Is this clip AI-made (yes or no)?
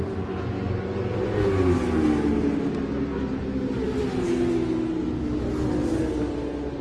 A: no